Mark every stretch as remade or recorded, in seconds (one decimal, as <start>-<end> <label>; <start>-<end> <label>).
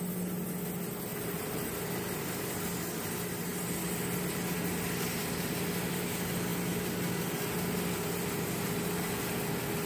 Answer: 0.0-1.1 recorded; 1.1-1.7 remade; 1.7-9.9 recorded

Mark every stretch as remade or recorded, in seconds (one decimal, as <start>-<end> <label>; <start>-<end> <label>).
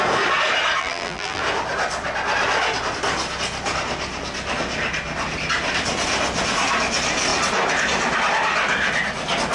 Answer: 0.0-0.8 recorded; 0.8-1.4 remade; 1.4-9.5 recorded